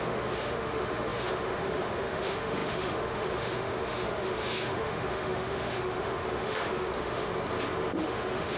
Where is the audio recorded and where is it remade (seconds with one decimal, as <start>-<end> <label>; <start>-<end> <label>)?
0.0-7.3 remade; 7.3-8.0 recorded; 8.0-8.6 remade